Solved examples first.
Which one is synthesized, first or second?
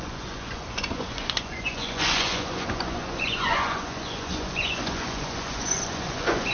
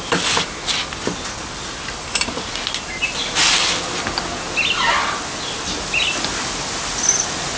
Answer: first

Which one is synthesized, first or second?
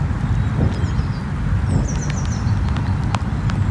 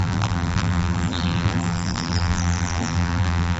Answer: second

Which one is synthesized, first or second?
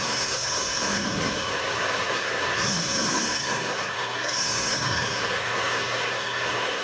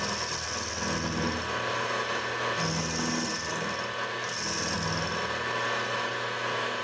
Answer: first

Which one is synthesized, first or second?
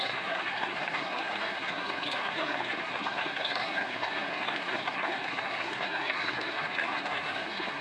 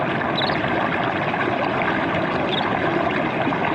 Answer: first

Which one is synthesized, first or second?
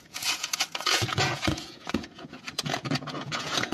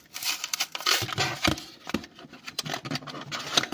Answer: first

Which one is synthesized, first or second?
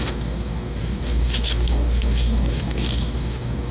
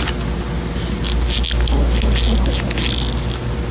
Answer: first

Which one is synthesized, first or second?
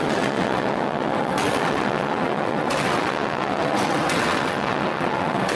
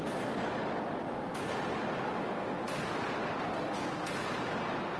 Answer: first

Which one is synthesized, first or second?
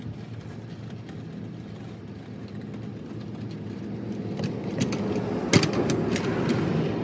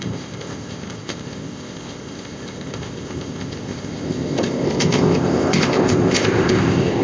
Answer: second